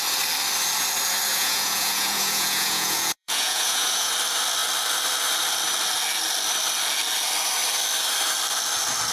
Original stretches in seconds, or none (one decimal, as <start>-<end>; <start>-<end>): 0.0-1.3; 4.1-9.1